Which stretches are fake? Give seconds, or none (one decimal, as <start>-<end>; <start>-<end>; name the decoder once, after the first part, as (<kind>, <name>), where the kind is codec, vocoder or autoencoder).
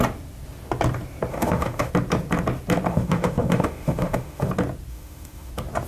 1.3-1.9 (autoencoder, DAC-VAE); 2.9-4.5; 4.9-5.5